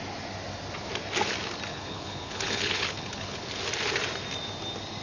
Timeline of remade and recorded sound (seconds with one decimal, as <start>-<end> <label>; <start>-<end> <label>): 0.0-1.7 recorded; 1.7-3.4 remade; 3.4-5.0 recorded